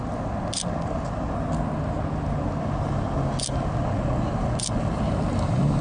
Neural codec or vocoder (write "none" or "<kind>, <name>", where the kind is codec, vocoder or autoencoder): none